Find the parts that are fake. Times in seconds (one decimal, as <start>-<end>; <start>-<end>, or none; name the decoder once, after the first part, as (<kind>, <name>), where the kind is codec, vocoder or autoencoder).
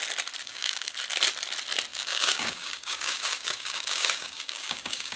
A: 0.4-0.9 (codec, DAC); 1.9-5.2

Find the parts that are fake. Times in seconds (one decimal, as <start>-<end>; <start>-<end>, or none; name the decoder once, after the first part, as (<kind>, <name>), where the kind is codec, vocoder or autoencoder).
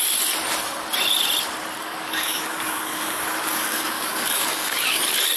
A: 1.8-5.0 (codec, DAC)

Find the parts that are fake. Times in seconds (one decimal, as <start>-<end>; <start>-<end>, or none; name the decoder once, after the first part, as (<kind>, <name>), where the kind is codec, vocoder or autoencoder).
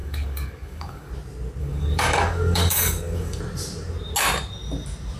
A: 0.0-1.1 (codec, DAC); 1.6-3.4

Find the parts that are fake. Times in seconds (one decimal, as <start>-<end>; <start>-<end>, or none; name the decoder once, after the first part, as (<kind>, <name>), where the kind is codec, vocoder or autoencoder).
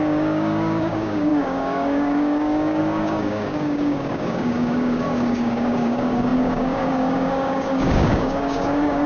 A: 0.0-9.1 (codec, DAC)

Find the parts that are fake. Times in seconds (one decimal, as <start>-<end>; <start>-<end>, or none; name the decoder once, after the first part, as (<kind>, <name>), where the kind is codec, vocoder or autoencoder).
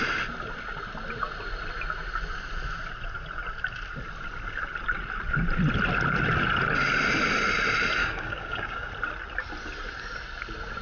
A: 8.0-8.9 (codec, DAC)